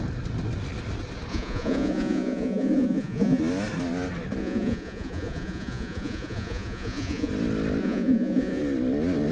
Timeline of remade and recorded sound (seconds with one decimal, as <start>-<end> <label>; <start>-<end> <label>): 0.0-1.3 recorded; 1.3-3.4 remade; 3.4-4.4 recorded; 4.4-7.3 remade; 7.3-7.8 recorded; 7.8-8.6 remade; 8.6-9.3 recorded